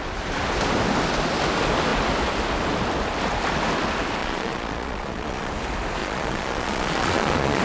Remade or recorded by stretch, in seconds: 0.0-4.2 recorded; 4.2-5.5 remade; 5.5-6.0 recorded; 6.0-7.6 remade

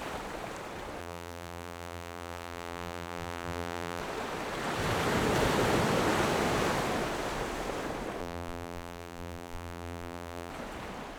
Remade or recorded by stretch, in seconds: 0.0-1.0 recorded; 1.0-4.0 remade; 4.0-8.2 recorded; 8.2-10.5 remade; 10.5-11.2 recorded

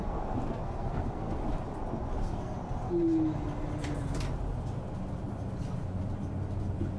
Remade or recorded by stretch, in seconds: 0.0-1.4 remade; 1.4-2.2 recorded; 2.2-2.6 remade; 2.6-7.0 recorded